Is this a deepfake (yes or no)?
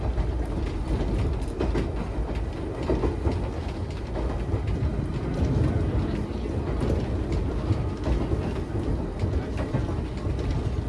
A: no